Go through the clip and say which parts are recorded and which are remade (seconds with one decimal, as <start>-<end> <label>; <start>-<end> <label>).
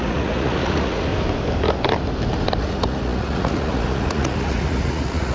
0.0-1.1 remade; 1.1-2.6 recorded; 2.6-5.3 remade